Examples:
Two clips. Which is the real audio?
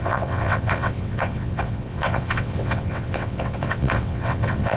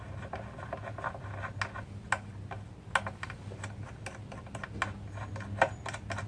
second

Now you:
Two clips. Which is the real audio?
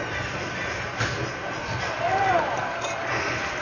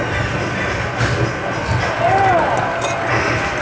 second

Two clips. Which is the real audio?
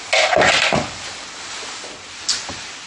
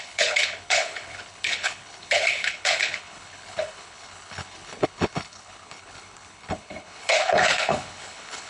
first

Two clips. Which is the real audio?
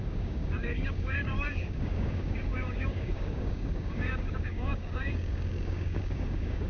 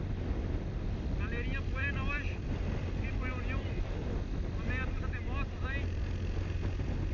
second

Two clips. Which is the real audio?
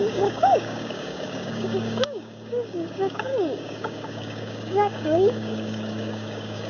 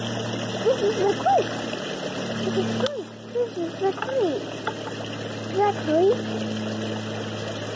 second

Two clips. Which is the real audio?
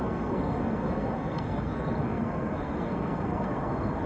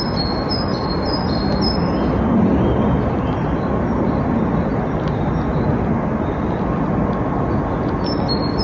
second